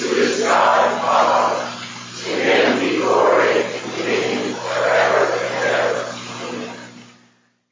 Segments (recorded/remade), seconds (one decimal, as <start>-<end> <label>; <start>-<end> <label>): 0.0-7.7 recorded